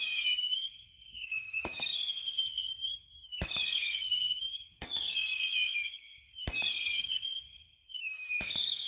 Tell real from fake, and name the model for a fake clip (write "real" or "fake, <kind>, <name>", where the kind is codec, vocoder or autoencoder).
fake, codec, SNAC